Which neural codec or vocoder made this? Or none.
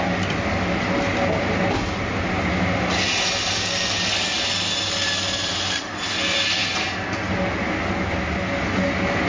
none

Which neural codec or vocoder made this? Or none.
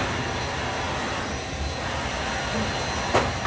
none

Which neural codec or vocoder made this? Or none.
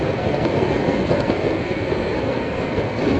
codec, SNAC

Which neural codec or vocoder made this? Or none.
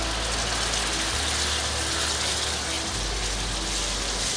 none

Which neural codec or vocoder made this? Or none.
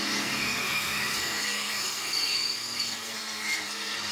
codec, SNAC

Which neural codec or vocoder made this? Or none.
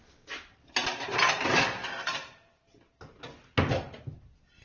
none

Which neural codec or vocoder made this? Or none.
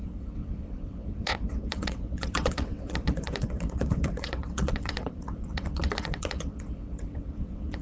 vocoder, WaveNeXt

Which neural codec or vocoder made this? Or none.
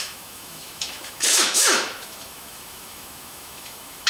autoencoder, DAC-VAE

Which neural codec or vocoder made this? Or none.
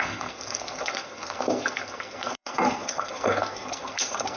codec, SNAC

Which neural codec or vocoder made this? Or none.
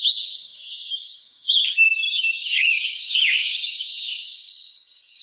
codec, DAC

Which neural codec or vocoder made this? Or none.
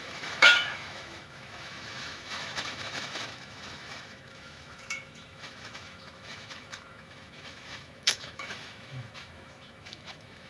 autoencoder, DAC-VAE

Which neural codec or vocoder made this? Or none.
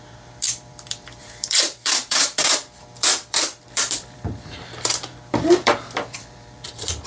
vocoder, BigVGAN v2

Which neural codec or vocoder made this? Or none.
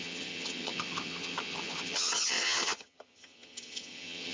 vocoder, HiFi-GAN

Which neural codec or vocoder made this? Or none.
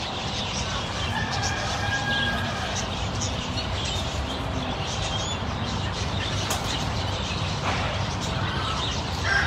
none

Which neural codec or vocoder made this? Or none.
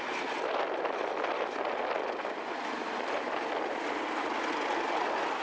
none